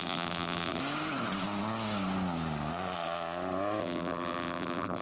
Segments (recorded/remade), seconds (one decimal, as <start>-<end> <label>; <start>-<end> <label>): 0.0-0.8 remade; 0.8-3.8 recorded; 3.8-5.0 remade